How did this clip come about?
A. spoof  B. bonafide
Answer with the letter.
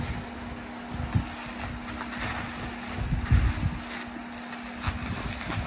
B